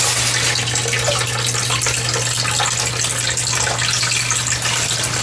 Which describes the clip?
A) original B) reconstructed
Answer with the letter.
A